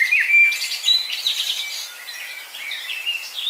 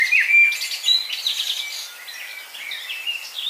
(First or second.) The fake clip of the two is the first